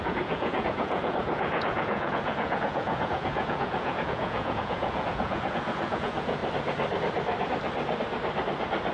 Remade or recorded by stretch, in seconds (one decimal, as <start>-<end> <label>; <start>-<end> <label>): 0.0-6.4 remade; 6.4-8.9 recorded